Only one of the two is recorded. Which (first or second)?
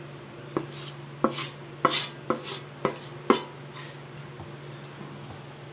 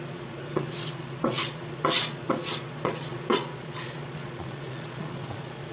first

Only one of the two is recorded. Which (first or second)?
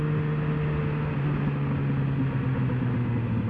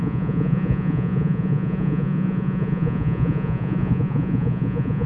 first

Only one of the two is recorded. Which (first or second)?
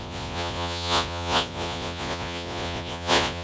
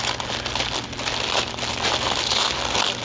second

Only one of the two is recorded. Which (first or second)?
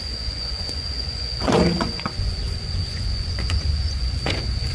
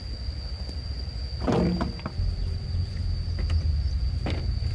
second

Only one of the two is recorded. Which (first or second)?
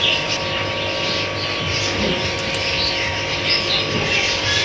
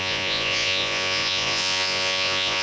first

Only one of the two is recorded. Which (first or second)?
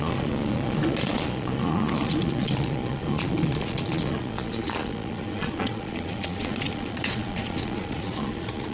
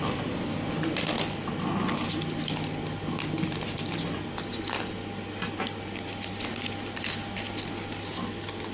second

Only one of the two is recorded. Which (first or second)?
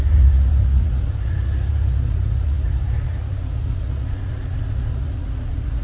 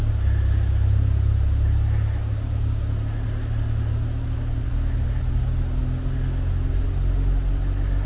second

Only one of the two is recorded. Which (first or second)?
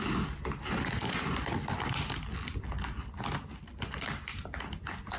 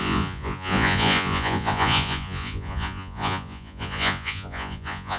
first